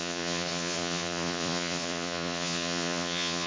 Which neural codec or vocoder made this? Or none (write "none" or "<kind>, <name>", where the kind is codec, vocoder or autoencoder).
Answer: vocoder, Vocos